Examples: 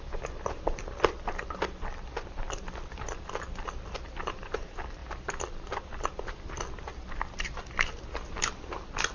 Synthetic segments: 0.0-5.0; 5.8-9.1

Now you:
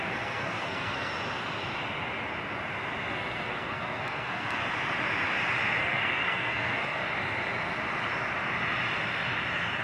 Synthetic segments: 0.0-1.1; 3.1-4.6; 5.8-7.0

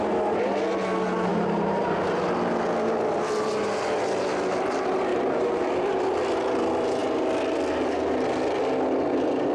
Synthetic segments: 1.3-1.9; 5.1-5.7

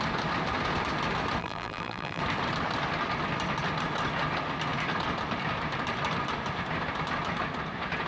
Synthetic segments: 1.4-2.2

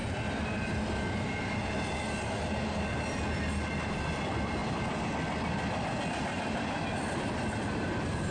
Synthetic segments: none

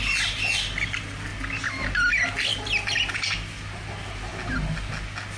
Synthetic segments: none